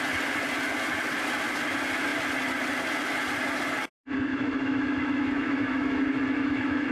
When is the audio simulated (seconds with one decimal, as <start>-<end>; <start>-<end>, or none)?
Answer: 4.3-6.9